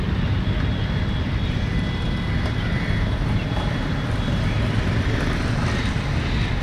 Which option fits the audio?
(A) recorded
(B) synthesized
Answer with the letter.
A